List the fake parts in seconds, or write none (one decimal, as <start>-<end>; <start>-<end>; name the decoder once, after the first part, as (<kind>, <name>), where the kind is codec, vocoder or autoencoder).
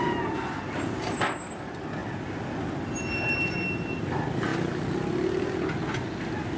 none